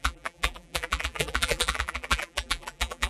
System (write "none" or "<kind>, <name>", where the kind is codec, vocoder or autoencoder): vocoder, BigVGAN v2